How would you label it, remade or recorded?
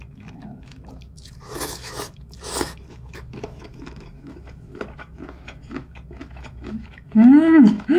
remade